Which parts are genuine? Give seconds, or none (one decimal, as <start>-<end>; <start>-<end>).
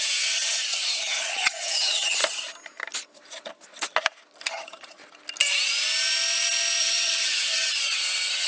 2.2-4.5; 5.0-6.8